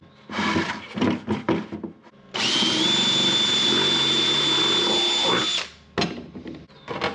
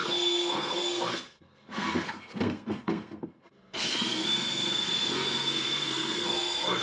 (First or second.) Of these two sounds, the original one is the first